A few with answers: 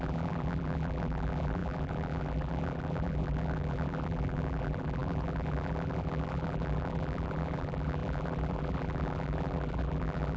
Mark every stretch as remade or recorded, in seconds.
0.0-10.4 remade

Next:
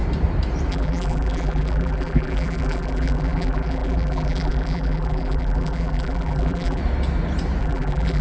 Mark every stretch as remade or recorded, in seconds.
0.0-0.7 recorded; 0.7-6.8 remade; 6.8-7.6 recorded; 7.6-8.2 remade

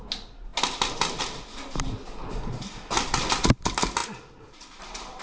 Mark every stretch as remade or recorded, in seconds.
0.0-5.2 recorded

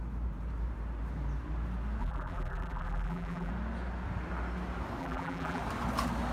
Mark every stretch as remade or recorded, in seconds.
0.0-2.0 recorded; 2.0-3.5 remade; 3.5-5.0 recorded; 5.0-5.6 remade; 5.6-6.3 recorded